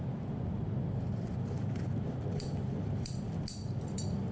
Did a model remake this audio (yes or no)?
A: yes